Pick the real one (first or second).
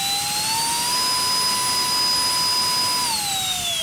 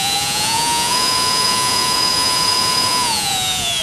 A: first